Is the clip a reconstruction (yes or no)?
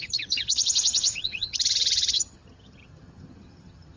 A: yes